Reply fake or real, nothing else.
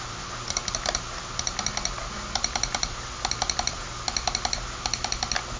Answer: real